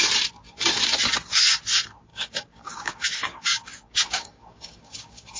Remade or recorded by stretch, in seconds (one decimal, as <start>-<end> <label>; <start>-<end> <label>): 0.0-2.1 recorded; 2.1-5.4 remade